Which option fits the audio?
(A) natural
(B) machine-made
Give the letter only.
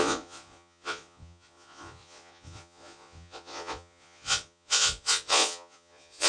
B